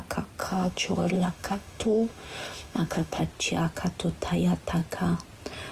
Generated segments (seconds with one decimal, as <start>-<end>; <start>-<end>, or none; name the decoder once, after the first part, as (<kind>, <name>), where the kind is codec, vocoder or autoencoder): 0.4-3.2 (autoencoder, DAC-VAE)